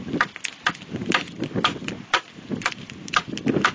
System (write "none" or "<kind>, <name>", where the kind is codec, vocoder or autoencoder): none